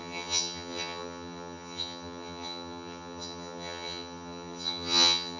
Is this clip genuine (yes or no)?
no